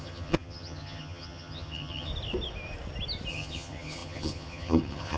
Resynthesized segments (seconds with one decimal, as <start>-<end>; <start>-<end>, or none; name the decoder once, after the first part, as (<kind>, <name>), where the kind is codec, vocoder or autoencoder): 0.0-2.1 (vocoder, HiFi-GAN); 3.3-5.2